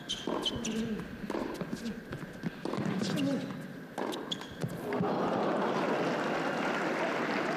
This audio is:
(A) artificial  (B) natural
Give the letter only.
B